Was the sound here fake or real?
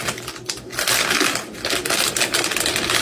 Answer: real